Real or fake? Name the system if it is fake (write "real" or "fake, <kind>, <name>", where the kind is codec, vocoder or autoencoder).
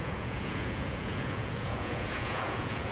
fake, vocoder, Vocos